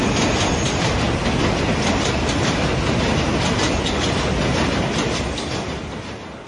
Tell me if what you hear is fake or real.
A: real